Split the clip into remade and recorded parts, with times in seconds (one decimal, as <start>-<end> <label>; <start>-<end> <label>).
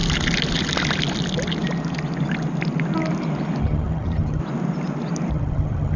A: 0.0-3.6 recorded; 3.6-4.4 remade; 4.4-5.3 recorded; 5.3-6.0 remade